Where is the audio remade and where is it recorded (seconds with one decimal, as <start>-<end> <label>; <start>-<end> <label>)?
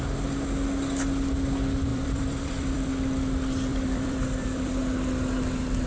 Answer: 0.0-1.9 recorded; 1.9-2.9 remade; 2.9-3.7 recorded; 3.7-4.8 remade; 4.8-5.9 recorded